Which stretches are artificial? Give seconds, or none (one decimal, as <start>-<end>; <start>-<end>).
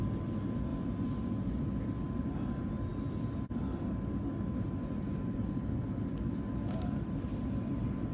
none